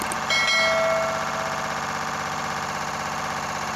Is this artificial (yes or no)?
no